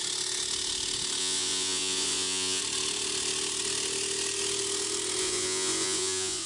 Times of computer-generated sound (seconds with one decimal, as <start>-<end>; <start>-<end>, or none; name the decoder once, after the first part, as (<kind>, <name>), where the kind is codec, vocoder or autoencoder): 1.2-2.6 (vocoder, Vocos); 5.2-6.5